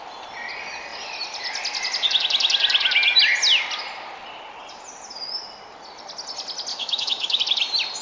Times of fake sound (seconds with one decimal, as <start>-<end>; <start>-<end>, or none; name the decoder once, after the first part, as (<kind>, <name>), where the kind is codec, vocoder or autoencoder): 6.7-7.4 (autoencoder, DAC-VAE)

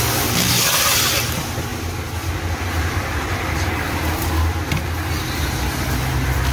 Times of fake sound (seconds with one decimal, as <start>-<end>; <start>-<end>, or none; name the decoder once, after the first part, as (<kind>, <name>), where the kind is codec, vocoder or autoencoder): none

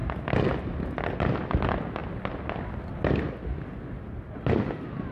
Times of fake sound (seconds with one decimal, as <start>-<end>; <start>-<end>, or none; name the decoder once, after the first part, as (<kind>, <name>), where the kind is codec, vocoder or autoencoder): none

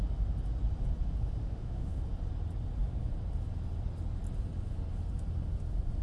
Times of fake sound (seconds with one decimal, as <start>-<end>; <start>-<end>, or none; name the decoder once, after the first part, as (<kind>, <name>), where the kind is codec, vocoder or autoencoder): 1.4-2.0 (autoencoder, DAC-VAE)

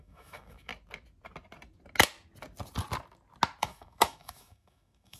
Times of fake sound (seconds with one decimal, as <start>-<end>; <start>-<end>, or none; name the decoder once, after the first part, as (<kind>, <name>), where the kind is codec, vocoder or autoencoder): 0.0-0.7 (autoencoder, DAC-VAE); 3.6-5.2